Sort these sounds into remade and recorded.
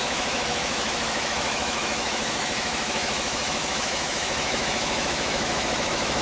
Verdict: remade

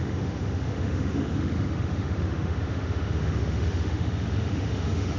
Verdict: remade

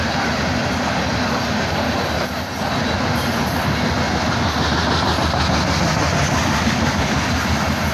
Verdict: recorded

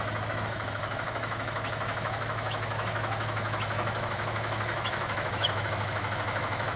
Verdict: remade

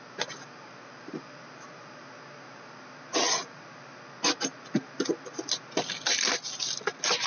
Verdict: recorded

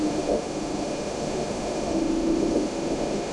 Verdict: remade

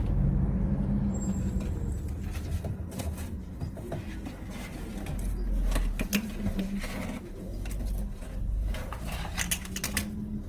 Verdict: recorded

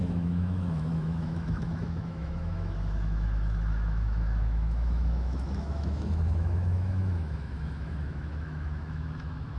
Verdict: remade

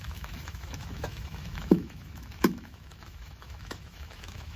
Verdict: remade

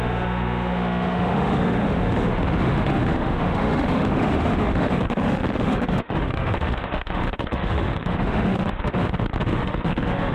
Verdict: remade